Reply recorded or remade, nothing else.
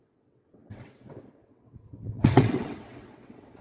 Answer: remade